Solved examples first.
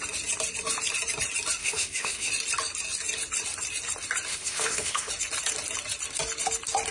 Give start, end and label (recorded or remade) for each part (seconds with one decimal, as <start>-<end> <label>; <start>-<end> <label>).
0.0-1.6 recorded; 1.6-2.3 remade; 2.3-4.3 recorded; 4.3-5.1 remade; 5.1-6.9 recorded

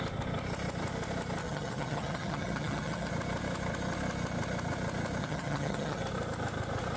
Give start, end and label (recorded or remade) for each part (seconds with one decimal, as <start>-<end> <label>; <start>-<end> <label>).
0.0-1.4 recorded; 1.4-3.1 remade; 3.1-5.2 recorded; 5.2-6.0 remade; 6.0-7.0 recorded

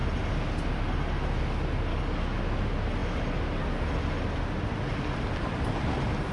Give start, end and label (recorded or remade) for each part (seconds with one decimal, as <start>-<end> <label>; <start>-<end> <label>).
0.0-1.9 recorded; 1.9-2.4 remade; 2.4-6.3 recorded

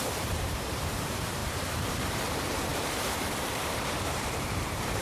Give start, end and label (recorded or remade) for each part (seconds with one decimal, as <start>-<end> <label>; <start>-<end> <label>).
0.0-5.0 remade